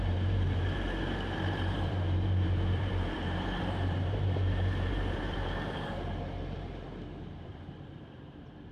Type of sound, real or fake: fake